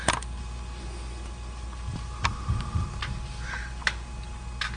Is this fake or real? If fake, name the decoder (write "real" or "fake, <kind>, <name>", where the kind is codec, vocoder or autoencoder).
real